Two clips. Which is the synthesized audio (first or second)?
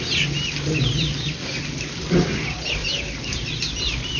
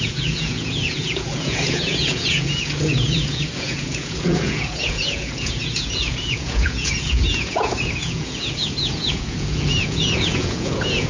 second